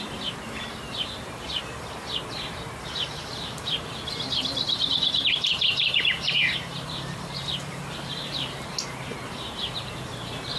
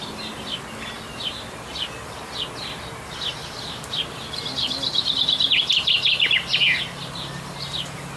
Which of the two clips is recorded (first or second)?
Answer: second